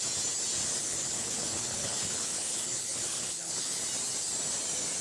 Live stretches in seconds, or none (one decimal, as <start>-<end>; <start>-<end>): 0.0-0.8; 3.8-5.0